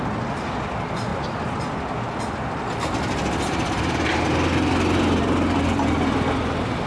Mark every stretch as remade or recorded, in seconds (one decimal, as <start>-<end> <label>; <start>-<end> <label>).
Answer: 0.0-6.9 recorded